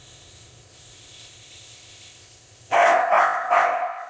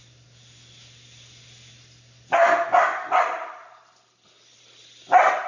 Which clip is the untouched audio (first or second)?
second